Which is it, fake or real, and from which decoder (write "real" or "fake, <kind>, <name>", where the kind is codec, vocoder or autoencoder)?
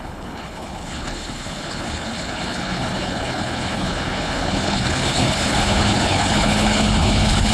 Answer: fake, codec, HILCodec